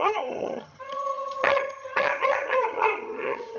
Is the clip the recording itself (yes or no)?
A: no